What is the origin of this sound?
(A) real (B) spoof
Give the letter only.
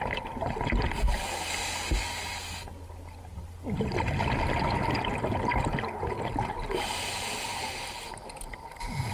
A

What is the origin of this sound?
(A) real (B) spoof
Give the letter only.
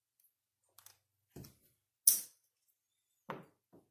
A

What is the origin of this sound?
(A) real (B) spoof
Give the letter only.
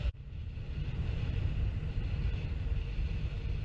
B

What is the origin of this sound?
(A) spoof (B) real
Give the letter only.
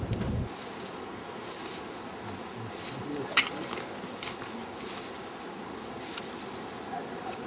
B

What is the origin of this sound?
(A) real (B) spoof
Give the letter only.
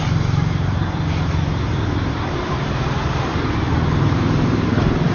B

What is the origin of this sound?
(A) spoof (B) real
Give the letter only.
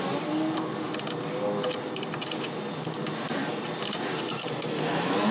B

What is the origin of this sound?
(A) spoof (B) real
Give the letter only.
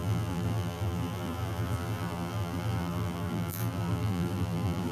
A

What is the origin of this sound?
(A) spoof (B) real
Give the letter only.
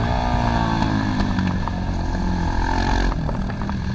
B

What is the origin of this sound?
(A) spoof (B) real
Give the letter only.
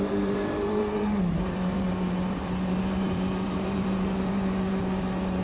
A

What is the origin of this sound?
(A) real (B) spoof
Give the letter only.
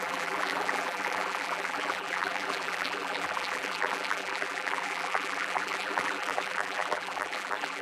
B